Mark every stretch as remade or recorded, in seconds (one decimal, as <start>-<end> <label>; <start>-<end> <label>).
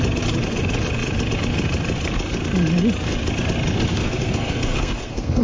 0.0-3.9 recorded; 3.9-5.4 remade